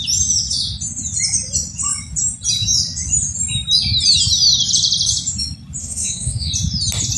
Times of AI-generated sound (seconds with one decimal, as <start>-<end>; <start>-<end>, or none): 5.8-6.5